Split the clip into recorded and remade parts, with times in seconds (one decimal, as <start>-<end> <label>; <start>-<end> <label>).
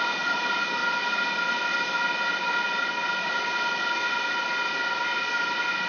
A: 0.0-5.9 recorded